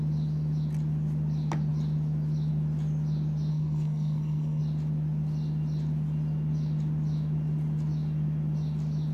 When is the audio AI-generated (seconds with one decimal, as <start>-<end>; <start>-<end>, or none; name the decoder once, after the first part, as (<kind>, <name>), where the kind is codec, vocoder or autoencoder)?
3.5-4.6 (codec, SNAC)